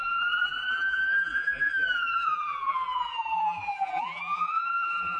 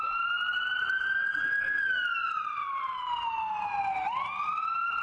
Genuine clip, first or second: second